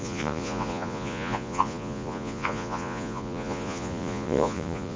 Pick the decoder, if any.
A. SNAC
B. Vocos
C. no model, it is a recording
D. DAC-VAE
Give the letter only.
B